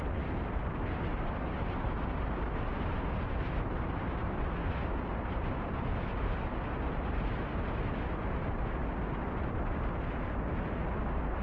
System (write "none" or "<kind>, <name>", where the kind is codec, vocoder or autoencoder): none